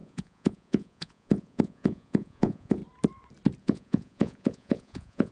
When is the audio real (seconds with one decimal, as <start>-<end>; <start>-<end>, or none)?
2.8-3.6